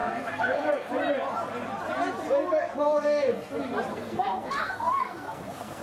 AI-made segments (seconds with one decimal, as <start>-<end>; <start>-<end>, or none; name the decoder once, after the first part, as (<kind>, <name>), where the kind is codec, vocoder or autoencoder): 0.0-0.9 (codec, SNAC); 2.6-3.5; 3.9-5.8